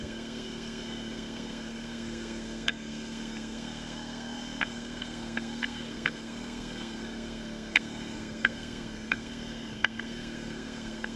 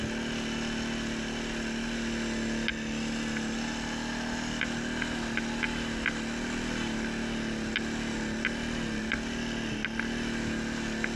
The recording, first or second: second